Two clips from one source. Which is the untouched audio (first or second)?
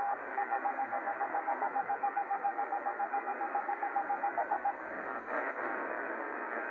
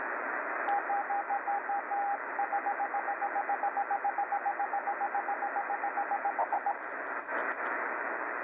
second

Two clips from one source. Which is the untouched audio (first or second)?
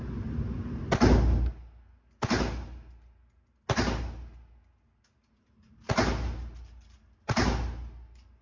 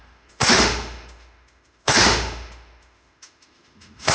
first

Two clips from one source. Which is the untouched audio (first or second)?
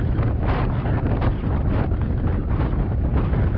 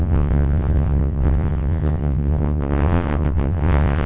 first